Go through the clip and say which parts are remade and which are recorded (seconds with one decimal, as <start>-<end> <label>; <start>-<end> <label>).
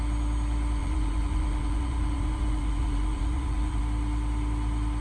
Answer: 0.0-0.8 recorded; 0.8-3.8 remade; 3.8-5.0 recorded